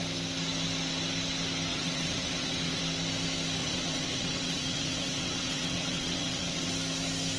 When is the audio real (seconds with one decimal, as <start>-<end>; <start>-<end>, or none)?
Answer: 0.0-1.7; 2.8-3.6; 6.7-7.4